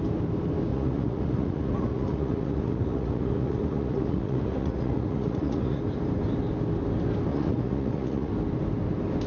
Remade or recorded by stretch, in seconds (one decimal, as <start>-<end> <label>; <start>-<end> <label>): 0.0-0.7 recorded; 0.7-5.8 remade; 5.8-7.3 recorded; 7.3-8.3 remade; 8.3-9.3 recorded